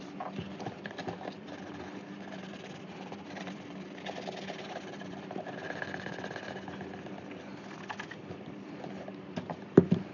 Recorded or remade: remade